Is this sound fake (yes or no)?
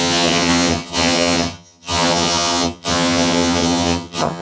yes